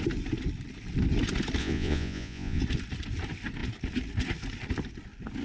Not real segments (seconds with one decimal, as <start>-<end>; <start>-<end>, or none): 1.6-2.6